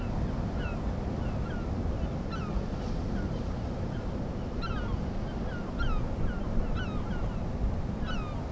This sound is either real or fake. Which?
real